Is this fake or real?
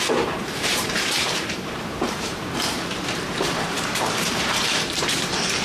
fake